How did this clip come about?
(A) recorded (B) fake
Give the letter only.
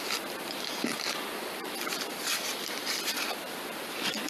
B